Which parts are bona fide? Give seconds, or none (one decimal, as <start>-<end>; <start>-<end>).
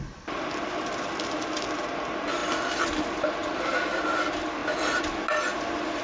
0.0-6.0